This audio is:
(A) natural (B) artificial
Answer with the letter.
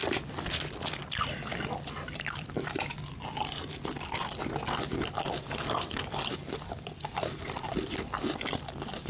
A